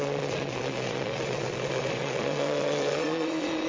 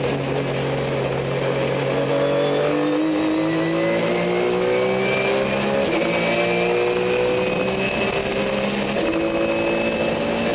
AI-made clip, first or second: first